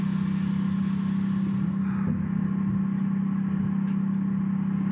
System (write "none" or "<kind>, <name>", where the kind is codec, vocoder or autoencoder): none